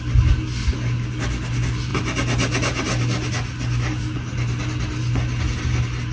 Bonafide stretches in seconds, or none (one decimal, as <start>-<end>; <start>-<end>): 0.0-6.1